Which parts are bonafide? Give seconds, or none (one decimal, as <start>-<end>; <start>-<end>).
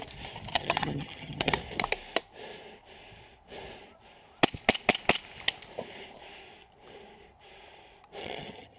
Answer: 0.0-0.5; 1.5-8.2